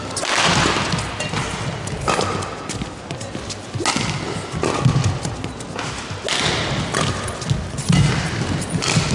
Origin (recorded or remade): recorded